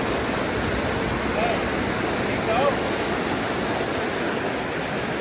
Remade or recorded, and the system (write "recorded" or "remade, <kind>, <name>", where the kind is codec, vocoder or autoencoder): recorded